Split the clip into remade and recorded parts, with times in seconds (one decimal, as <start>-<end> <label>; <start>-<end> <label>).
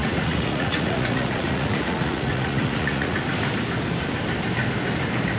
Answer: 0.0-3.2 remade; 3.2-5.4 recorded